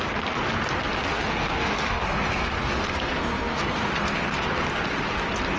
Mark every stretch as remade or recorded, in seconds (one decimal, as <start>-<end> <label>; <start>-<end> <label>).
0.0-1.1 recorded; 1.1-4.5 remade; 4.5-5.6 recorded